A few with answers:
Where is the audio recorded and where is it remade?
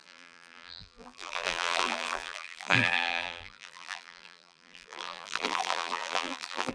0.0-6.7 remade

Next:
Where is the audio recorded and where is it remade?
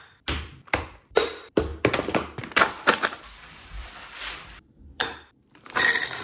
0.0-1.7 remade; 1.7-2.4 recorded; 2.4-6.2 remade